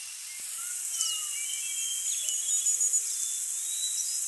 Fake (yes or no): no